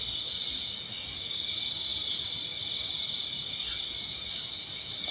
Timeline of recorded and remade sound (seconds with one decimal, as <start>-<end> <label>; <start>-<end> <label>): 0.0-5.1 recorded